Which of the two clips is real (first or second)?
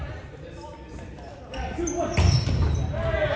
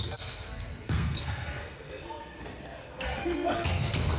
first